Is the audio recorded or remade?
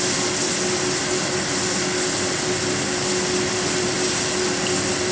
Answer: recorded